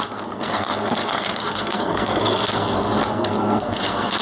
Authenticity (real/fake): fake